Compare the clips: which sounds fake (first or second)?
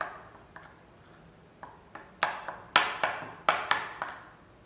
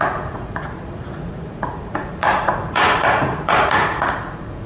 second